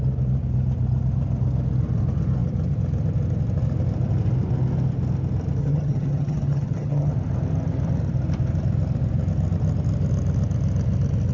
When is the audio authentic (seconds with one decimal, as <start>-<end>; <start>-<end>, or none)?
0.0-5.6; 7.1-11.3